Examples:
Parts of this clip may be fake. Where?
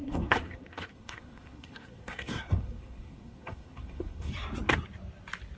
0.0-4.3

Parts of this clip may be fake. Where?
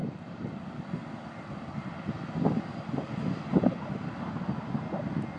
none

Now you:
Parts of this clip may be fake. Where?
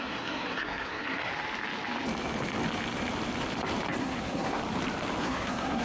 0.0-1.3; 4.0-4.6; 5.2-5.8